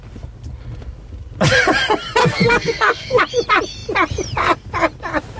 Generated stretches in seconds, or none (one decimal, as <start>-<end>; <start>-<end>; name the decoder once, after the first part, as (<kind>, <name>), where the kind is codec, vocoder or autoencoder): 2.2-3.2 (codec, SNAC)